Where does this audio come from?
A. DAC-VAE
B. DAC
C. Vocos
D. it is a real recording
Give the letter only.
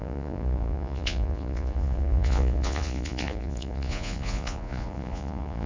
C